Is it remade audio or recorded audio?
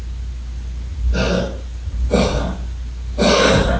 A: recorded